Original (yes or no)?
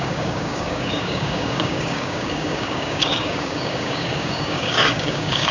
no